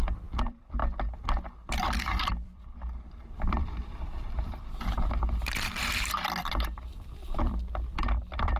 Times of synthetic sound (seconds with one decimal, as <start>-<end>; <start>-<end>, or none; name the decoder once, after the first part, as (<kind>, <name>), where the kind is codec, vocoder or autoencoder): 0.0-0.8 (vocoder, BigVGAN v2); 1.7-8.6